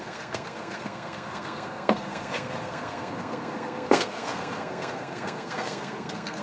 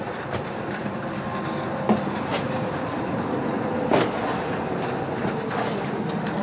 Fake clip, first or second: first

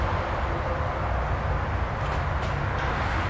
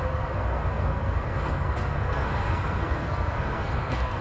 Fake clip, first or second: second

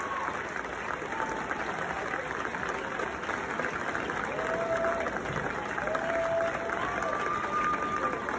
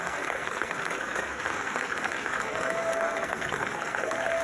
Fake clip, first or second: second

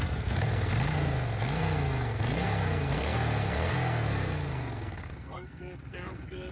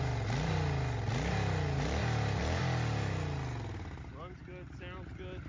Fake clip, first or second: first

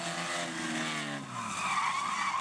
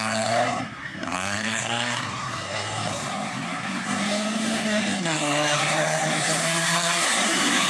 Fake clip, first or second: second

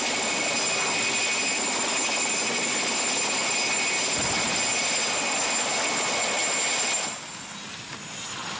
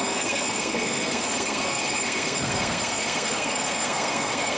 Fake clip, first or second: second